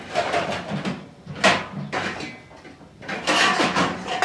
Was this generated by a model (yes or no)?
no